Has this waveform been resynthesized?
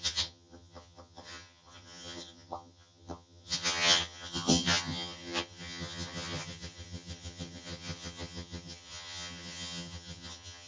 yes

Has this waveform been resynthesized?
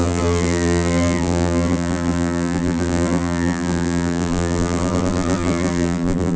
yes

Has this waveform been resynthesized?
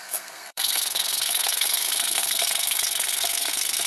yes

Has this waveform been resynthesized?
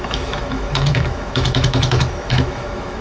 yes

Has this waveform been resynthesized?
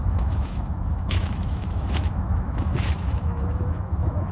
yes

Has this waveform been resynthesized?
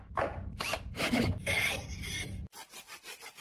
yes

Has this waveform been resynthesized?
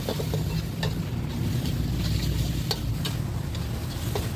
no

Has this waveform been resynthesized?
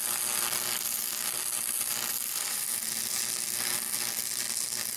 no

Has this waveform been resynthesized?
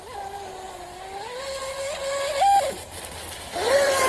no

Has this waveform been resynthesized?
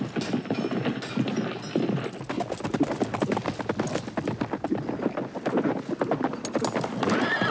no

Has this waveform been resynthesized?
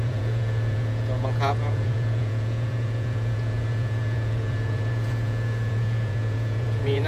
yes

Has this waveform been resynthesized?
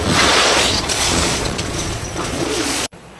yes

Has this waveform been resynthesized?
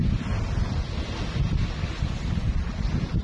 no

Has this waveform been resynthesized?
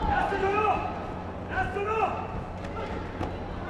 no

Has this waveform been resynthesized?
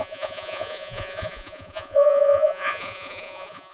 yes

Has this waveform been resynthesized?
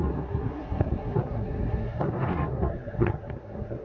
yes